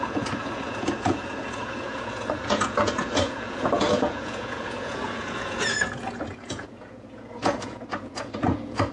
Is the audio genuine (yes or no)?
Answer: no